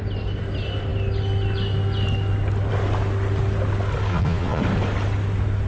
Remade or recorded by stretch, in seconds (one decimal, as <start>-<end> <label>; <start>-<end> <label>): 0.0-4.1 recorded; 4.1-4.6 remade; 4.6-5.7 recorded